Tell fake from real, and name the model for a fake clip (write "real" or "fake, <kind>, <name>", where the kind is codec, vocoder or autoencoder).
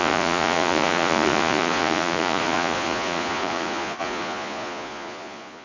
fake, vocoder, Vocos